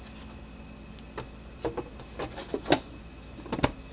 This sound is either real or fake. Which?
real